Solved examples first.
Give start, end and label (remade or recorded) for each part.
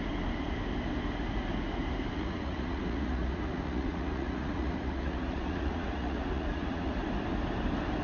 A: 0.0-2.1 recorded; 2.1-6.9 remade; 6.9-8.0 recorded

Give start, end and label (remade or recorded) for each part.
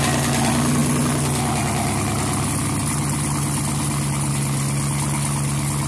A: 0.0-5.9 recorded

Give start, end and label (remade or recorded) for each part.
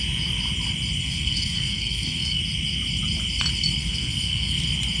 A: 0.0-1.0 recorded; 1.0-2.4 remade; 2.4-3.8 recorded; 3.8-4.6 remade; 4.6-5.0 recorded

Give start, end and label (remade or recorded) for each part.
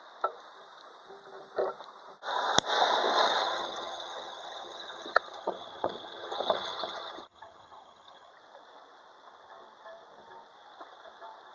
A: 0.0-3.4 recorded; 3.4-8.3 remade; 8.3-11.5 recorded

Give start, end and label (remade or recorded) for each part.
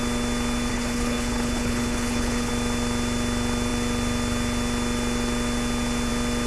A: 0.0-0.7 recorded; 0.7-2.5 remade; 2.5-6.5 recorded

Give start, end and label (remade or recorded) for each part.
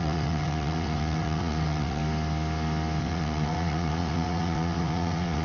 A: 0.0-2.0 remade; 2.0-3.0 recorded; 3.0-5.4 remade